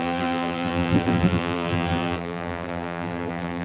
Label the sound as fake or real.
fake